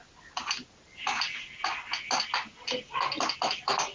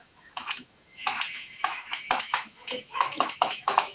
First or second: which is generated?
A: second